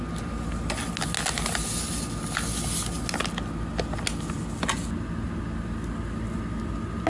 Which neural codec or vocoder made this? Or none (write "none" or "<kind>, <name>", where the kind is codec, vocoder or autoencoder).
none